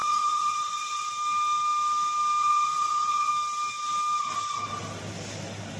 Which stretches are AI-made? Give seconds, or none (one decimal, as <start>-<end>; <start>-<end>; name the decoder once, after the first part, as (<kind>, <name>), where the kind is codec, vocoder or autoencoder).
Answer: 0.0-1.1 (vocoder, Vocos); 2.4-3.3